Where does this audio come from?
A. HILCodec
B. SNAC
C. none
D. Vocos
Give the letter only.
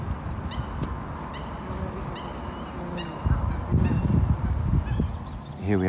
C